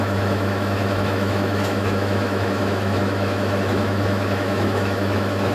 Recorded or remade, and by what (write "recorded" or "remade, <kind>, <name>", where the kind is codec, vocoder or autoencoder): remade, autoencoder, DAC-VAE